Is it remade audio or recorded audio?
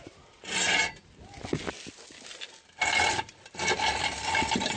recorded